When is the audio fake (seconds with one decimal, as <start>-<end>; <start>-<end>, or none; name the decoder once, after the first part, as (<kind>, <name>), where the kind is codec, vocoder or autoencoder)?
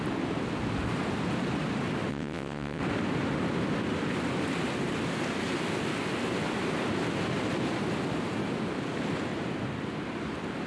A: 2.1-2.8 (vocoder, WaveNeXt)